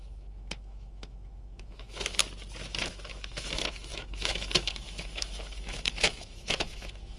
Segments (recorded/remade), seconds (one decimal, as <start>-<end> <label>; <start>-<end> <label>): 0.0-2.2 remade; 2.2-2.9 recorded; 2.9-7.2 remade